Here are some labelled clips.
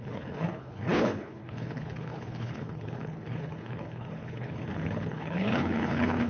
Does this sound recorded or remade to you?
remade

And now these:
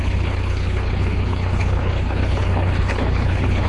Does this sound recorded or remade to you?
remade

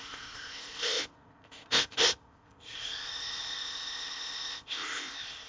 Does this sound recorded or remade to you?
remade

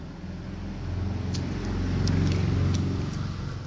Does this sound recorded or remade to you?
recorded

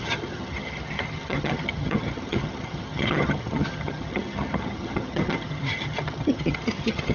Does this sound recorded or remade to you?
remade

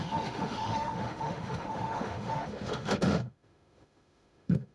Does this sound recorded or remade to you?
remade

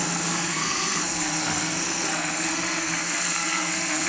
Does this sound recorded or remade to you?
remade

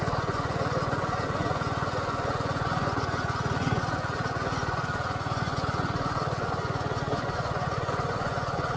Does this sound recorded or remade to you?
remade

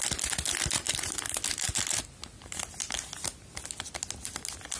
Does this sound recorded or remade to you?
recorded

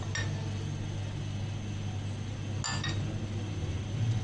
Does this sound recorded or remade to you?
recorded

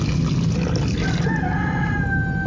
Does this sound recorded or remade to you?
recorded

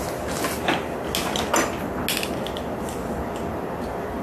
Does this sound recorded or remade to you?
recorded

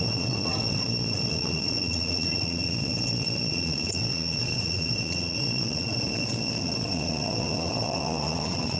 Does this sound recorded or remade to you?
remade